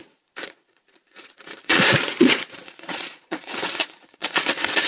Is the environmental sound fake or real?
fake